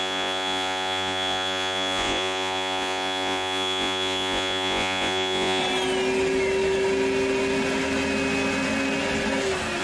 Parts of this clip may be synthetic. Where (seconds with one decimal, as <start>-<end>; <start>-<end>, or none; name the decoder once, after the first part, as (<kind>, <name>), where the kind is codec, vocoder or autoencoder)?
0.0-5.6 (vocoder, Vocos)